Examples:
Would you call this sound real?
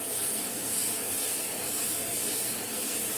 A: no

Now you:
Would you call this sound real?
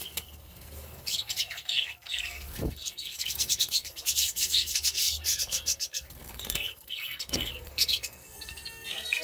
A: no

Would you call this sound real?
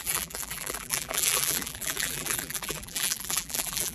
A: no